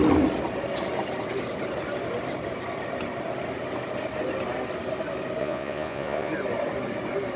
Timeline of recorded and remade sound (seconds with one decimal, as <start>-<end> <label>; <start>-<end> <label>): 0.0-5.4 recorded; 5.4-6.3 remade; 6.3-7.4 recorded